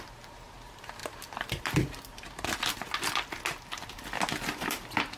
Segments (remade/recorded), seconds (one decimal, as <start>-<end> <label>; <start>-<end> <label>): 0.0-5.2 recorded

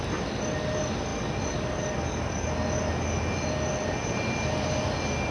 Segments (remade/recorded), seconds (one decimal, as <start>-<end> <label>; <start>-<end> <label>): 0.0-5.3 recorded

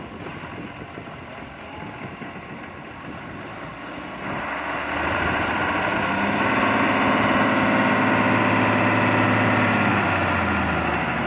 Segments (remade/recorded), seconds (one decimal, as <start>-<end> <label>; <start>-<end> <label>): 0.0-11.3 recorded

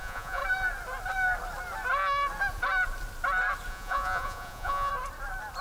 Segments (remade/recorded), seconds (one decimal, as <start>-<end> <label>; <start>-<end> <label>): 0.0-0.4 remade; 0.4-3.7 recorded; 3.7-4.9 remade; 4.9-5.6 recorded

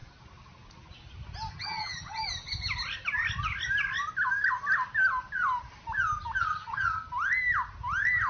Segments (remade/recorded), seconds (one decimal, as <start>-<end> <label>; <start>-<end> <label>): 0.0-1.5 recorded; 1.5-2.2 remade; 2.2-6.4 recorded; 6.4-7.0 remade; 7.0-8.3 recorded